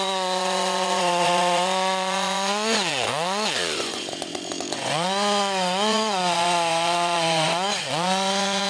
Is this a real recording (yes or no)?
no